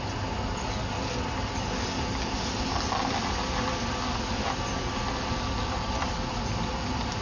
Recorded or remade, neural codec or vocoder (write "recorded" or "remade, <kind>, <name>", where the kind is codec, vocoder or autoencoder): recorded